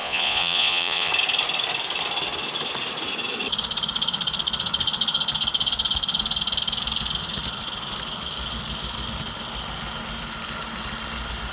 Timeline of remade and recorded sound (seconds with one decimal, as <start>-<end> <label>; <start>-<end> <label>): 0.0-1.1 remade; 1.1-11.5 recorded

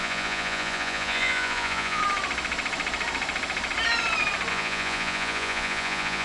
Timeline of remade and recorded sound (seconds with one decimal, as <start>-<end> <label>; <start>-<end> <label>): 0.0-2.0 remade; 2.0-4.5 recorded; 4.5-6.2 remade